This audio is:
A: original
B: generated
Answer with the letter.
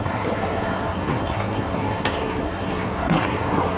B